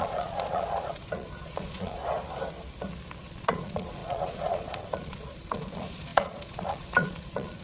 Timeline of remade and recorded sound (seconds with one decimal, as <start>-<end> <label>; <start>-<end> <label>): 0.0-2.0 remade; 2.0-3.2 recorded; 3.2-7.6 remade